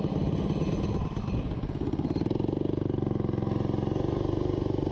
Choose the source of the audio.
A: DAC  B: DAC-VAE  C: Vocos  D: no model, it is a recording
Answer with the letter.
D